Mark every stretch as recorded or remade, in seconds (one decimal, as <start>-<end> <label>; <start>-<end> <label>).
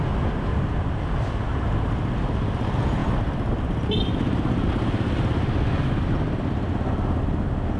0.0-0.5 recorded; 0.5-2.2 remade; 2.2-7.8 recorded